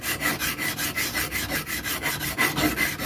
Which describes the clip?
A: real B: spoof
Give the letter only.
A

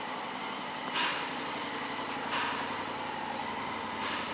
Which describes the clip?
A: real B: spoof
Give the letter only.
A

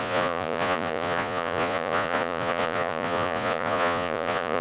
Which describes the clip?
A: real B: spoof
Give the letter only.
B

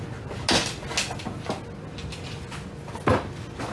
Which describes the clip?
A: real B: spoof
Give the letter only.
A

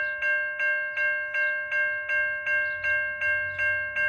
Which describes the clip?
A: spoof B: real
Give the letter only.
B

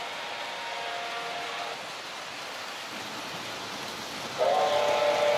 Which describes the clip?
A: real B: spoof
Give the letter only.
A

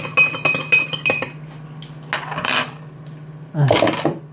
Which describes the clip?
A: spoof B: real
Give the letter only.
B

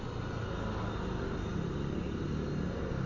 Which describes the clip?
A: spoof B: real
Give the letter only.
B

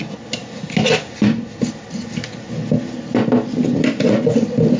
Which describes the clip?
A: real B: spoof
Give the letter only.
A